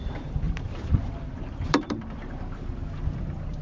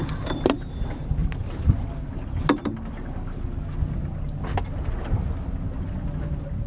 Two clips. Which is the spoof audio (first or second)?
first